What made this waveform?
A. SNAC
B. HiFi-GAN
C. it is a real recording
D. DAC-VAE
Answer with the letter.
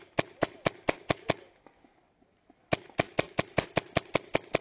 C